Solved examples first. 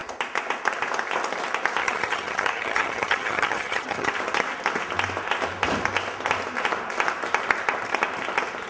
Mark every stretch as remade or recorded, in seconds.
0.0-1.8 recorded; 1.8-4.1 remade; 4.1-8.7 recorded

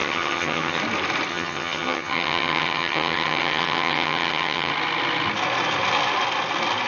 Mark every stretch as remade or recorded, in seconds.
0.0-0.8 remade; 0.8-1.3 recorded; 1.3-4.7 remade; 4.7-6.9 recorded

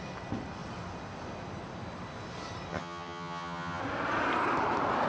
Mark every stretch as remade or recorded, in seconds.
0.0-2.7 recorded; 2.7-3.8 remade; 3.8-5.1 recorded